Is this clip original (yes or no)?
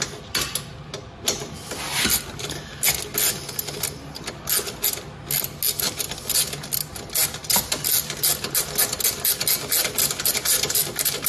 yes